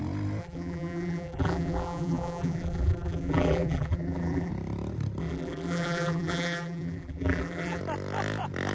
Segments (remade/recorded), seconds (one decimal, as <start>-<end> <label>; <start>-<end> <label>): 0.0-0.4 recorded; 0.4-4.5 remade; 4.5-5.2 recorded; 5.2-7.8 remade; 7.8-8.7 recorded